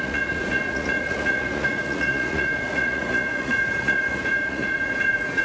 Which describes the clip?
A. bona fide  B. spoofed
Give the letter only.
B